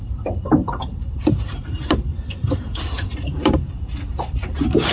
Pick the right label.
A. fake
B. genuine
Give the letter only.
A